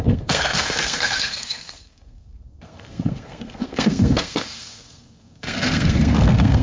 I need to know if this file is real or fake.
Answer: fake